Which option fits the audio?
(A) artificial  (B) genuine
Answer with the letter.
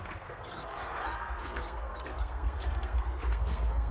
A